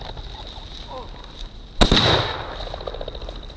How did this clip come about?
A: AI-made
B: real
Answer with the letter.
B